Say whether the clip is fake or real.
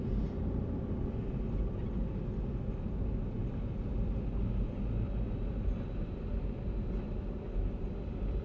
real